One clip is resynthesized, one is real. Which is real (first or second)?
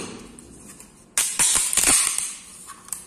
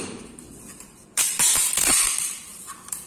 first